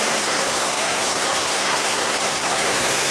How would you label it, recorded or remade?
remade